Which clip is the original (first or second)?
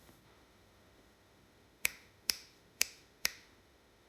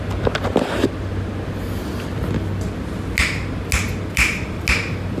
second